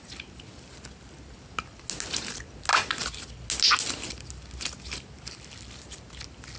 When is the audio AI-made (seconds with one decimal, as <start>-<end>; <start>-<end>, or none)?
none